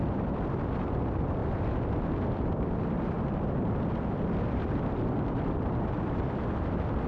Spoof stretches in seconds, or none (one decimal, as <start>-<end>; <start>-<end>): 0.0-7.1